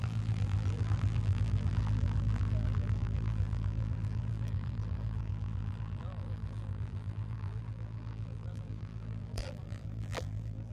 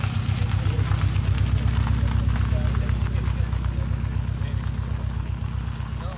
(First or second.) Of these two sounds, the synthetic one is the first